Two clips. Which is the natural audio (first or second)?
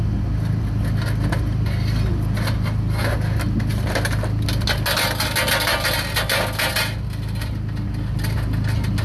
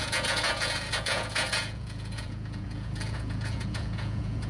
first